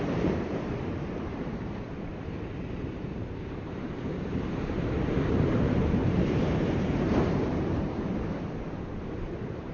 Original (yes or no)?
no